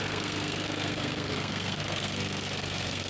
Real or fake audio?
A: fake